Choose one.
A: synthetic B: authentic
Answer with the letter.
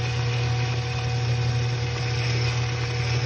B